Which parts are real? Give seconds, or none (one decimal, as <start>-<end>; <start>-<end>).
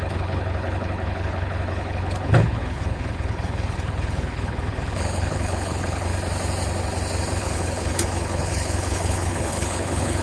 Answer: 6.1-7.4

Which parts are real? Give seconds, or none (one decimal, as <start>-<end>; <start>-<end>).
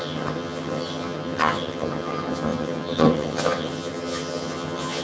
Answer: none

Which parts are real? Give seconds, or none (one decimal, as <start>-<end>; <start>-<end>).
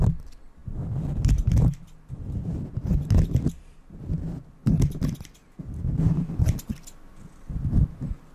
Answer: 0.0-8.3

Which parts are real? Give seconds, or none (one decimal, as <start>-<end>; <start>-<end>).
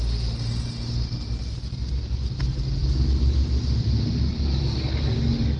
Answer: 0.0-5.6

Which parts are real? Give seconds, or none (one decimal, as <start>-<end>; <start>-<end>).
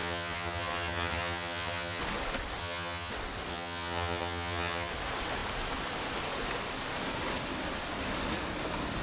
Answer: 2.0-2.6; 3.1-3.5; 4.9-9.0